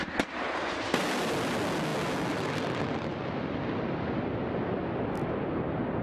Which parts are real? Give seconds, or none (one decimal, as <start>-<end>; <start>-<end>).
0.0-6.0